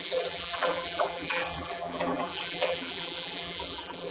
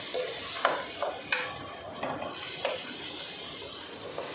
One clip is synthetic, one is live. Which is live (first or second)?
second